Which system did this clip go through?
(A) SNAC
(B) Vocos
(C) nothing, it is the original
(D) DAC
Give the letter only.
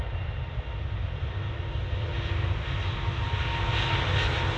C